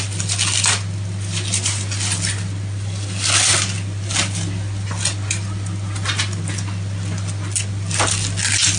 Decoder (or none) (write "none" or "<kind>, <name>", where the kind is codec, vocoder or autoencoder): none